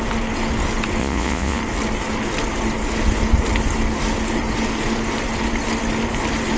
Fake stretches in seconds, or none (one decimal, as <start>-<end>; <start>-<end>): 1.0-1.6